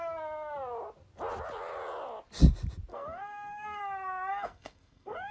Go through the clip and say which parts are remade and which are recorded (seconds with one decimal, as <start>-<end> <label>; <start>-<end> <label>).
0.0-2.9 recorded; 2.9-3.8 remade; 3.8-4.3 recorded; 4.3-5.3 remade